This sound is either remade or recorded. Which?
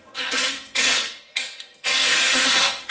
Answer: remade